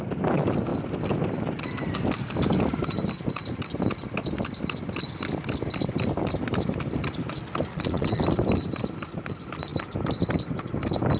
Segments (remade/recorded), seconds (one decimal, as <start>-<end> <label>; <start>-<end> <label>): 0.0-7.7 recorded; 7.7-8.2 remade; 8.2-11.2 recorded

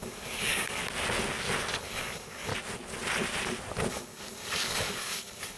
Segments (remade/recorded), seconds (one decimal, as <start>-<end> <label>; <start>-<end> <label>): 0.0-0.8 remade; 0.8-1.8 recorded; 1.8-2.5 remade; 2.5-3.9 recorded; 3.9-5.6 remade

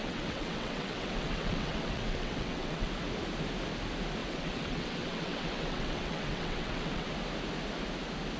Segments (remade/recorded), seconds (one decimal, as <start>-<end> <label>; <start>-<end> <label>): 0.0-2.9 remade; 2.9-4.2 recorded; 4.2-7.1 remade; 7.1-8.4 recorded